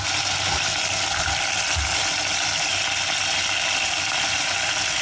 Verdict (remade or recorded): recorded